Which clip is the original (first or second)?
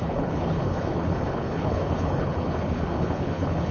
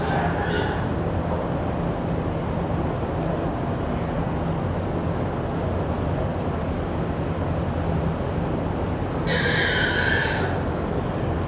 second